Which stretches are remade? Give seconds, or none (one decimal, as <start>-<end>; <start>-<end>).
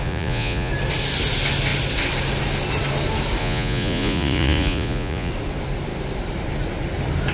0.0-0.7; 3.4-5.3